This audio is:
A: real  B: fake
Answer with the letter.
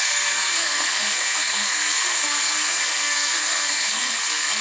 B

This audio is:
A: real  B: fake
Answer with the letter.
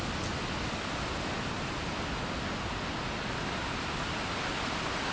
A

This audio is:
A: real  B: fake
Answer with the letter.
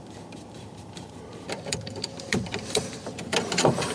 B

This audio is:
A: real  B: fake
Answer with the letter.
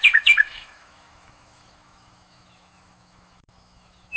B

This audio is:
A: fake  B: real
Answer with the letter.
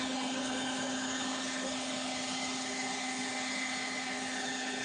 A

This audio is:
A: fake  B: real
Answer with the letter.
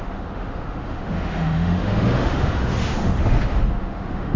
A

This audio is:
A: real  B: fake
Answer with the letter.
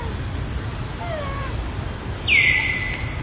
A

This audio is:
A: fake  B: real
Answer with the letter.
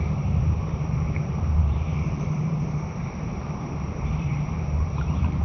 A